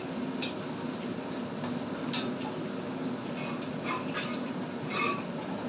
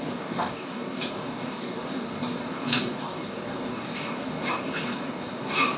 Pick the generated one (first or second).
second